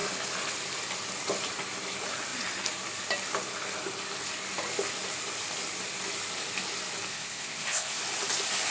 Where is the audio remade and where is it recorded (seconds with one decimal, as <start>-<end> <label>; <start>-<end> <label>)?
0.0-7.1 recorded; 7.1-8.0 remade; 8.0-8.7 recorded